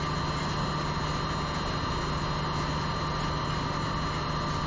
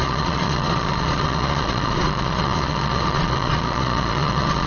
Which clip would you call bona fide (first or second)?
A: first